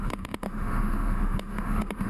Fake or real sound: fake